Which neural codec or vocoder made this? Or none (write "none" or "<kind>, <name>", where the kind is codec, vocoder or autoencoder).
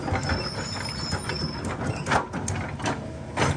none